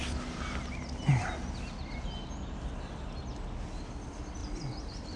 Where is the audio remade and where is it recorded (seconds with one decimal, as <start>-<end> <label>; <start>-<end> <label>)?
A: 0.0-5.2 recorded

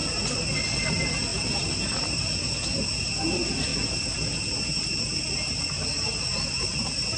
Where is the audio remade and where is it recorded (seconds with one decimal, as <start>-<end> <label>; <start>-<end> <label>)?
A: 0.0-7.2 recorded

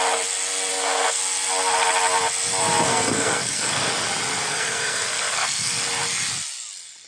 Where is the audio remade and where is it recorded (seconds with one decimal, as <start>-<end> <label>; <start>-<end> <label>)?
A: 0.0-0.7 recorded; 0.7-1.2 remade; 1.2-2.6 recorded; 2.6-3.9 remade; 3.9-4.4 recorded; 4.4-5.8 remade; 5.8-7.1 recorded

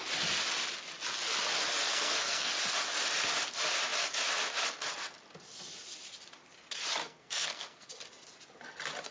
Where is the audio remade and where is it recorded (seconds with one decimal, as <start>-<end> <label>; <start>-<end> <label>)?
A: 0.0-1.9 recorded; 1.9-2.5 remade; 2.5-7.0 recorded; 7.0-7.9 remade; 7.9-9.1 recorded